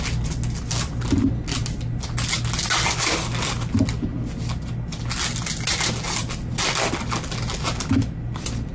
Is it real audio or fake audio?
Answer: real